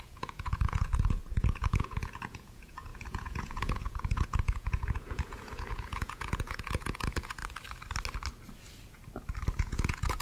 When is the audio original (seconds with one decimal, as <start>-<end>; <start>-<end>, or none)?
7.4-9.6